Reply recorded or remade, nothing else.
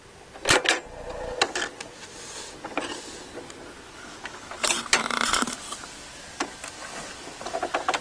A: recorded